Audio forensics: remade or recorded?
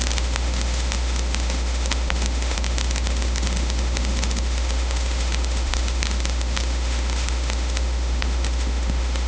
remade